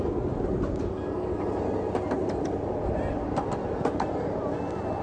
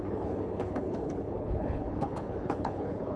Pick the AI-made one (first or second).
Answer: second